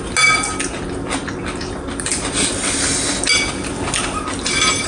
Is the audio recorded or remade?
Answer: recorded